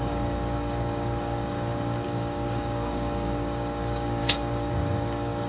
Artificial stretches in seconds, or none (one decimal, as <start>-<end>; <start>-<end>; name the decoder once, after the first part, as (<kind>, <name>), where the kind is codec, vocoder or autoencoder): 0.0-5.5 (codec, DAC)